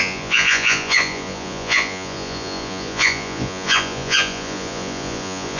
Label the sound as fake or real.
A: fake